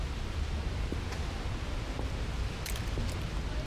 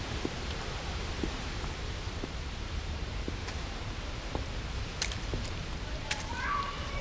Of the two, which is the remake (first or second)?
second